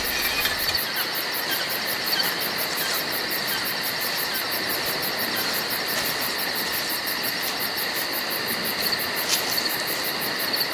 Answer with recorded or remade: recorded